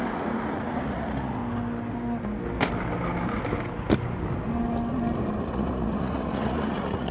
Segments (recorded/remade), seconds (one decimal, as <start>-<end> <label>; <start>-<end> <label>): 0.0-1.4 remade; 1.4-5.4 recorded; 5.4-7.1 remade